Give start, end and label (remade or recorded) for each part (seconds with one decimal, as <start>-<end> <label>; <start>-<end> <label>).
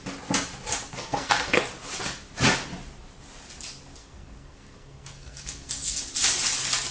0.0-0.9 recorded; 0.9-1.6 remade; 1.6-4.0 recorded; 4.0-6.0 remade; 6.0-6.9 recorded